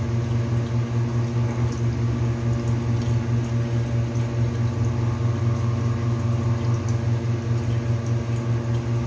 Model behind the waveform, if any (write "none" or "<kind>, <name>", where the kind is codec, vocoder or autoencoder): none